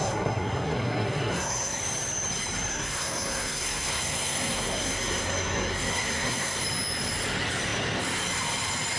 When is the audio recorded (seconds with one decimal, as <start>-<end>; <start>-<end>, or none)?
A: 1.8-2.7; 6.6-9.0